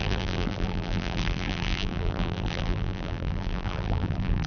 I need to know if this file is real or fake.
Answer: fake